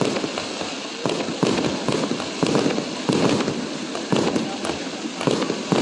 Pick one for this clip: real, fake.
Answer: fake